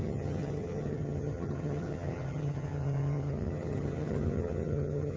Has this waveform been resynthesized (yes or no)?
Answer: yes